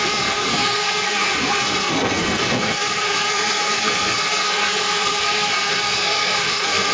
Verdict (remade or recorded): remade